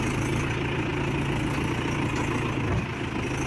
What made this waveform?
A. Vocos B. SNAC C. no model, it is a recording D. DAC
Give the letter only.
C